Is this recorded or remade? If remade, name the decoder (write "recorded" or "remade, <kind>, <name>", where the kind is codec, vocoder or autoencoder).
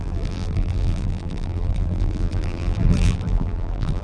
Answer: remade, vocoder, BigVGAN v2